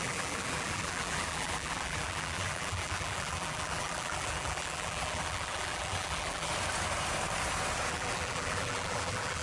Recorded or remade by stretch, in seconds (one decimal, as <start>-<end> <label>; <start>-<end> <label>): 0.0-6.5 remade; 6.5-7.9 recorded; 7.9-9.4 remade